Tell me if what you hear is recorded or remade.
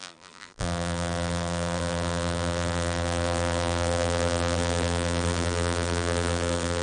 remade